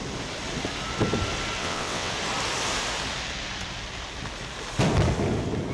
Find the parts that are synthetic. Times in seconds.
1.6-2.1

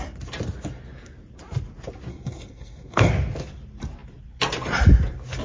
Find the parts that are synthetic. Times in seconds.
2.1-3.1

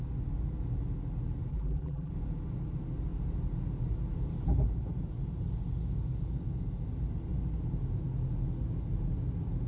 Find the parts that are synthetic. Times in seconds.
1.5-2.1

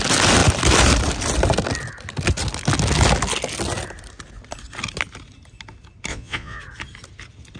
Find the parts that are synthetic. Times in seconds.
6.1-6.6

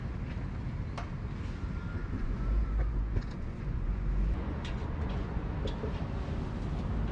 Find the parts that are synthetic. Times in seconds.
2.0-5.4

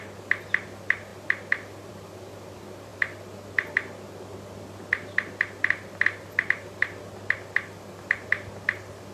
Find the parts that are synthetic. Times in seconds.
none

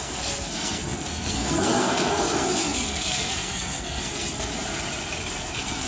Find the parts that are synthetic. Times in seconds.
0.0-4.5; 5.3-5.9